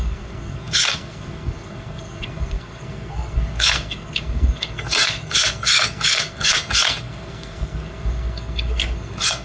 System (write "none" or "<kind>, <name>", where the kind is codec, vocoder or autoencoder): codec, SNAC